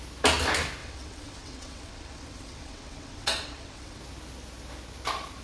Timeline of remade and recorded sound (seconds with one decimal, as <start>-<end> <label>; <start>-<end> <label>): 0.0-0.8 recorded; 0.8-4.0 remade; 4.0-5.4 recorded